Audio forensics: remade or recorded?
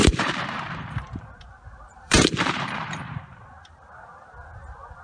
remade